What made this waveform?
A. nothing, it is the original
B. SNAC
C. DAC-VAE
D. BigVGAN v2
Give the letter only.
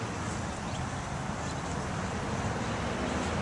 A